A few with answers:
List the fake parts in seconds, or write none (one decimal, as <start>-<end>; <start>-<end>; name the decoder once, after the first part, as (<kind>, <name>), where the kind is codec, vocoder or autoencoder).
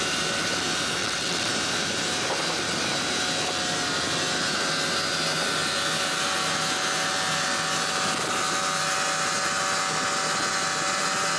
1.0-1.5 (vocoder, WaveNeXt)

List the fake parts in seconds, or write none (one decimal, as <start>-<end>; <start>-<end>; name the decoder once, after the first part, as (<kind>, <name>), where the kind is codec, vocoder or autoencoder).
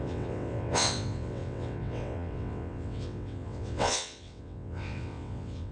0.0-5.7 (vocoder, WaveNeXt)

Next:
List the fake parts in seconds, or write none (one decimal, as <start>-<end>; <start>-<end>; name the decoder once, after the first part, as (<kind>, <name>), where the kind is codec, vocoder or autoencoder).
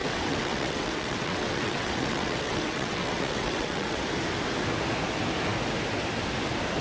0.0-4.0 (vocoder, WaveNeXt)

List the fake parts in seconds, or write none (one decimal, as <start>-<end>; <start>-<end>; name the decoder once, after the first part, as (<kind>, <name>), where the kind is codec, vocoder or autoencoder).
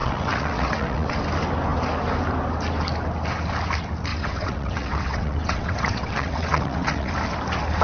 0.0-1.2 (vocoder, WaveNeXt); 4.1-7.1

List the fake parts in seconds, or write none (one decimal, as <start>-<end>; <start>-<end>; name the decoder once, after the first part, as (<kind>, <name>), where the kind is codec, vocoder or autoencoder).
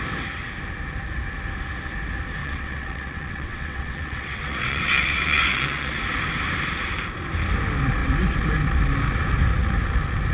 2.4-6.0 (vocoder, WaveNeXt)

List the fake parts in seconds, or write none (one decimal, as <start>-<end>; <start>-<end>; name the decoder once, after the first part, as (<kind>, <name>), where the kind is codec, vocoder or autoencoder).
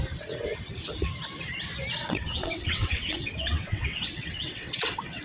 2.0-5.2 (vocoder, WaveNeXt)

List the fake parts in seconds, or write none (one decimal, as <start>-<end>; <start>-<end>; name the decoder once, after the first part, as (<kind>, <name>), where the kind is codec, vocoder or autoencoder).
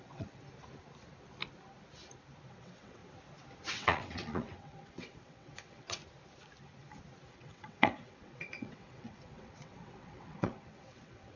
0.0-0.4 (vocoder, WaveNeXt); 2.5-3.0; 3.7-6.0; 7.3-11.4